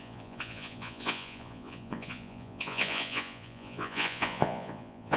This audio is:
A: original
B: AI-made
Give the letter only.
B